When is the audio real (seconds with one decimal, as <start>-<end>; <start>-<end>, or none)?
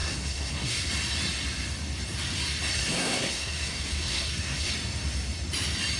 0.9-2.8; 4.7-6.0